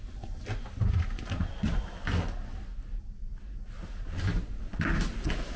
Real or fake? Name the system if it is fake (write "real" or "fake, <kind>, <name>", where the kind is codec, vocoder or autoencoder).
real